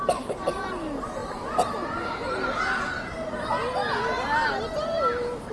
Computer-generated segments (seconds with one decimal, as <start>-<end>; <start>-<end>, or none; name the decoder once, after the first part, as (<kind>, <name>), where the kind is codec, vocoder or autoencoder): none